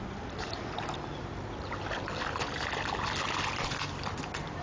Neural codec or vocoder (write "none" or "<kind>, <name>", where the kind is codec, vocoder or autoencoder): none